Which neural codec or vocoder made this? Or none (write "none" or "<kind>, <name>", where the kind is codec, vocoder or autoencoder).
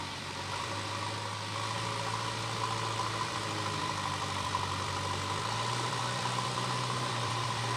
vocoder, BigVGAN v2